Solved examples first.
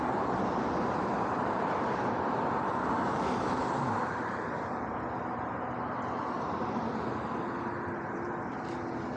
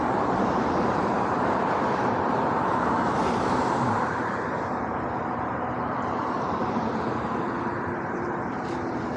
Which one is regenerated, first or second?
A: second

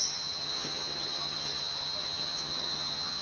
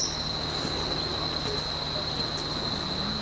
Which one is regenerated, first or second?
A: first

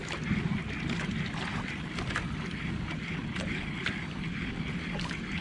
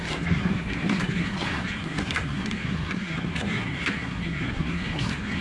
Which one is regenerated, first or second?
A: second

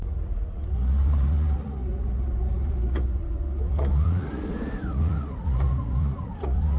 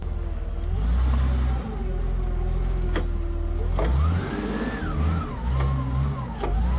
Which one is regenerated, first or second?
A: first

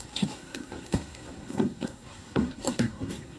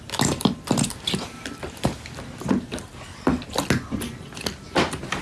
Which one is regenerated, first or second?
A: first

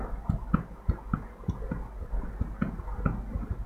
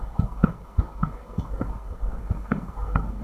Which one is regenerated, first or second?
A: second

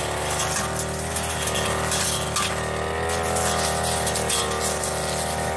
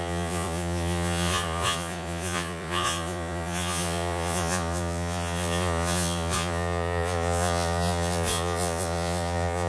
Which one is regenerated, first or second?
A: second